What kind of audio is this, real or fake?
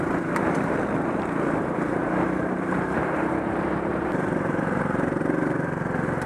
fake